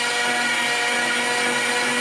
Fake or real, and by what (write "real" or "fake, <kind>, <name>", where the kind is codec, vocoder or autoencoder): real